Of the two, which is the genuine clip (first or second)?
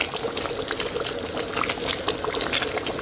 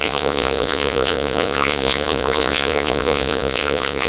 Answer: first